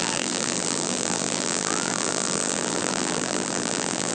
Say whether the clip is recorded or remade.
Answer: remade